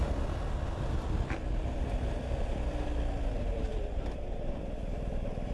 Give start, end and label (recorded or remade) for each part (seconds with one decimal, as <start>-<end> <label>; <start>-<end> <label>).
0.0-3.7 recorded; 3.7-5.5 remade